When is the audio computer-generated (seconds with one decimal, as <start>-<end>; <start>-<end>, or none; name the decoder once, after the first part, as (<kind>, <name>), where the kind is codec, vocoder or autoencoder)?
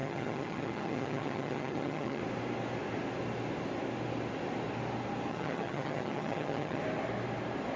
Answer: 0.0-2.2 (vocoder, HiFi-GAN); 5.3-6.8